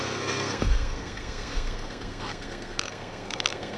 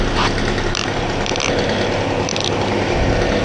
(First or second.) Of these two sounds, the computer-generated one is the first